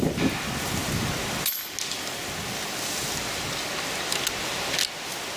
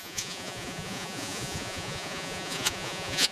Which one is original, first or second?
first